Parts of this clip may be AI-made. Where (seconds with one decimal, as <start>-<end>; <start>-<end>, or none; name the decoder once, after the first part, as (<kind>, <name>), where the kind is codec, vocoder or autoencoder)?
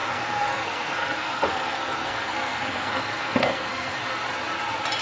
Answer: 0.0-4.0 (codec, SNAC)